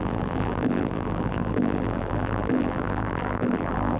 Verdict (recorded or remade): remade